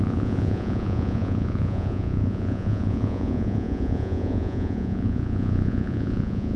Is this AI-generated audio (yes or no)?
yes